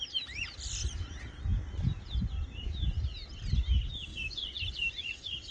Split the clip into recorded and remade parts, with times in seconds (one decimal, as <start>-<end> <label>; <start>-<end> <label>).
0.0-4.1 recorded; 4.1-5.5 remade